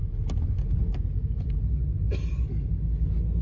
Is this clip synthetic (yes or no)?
no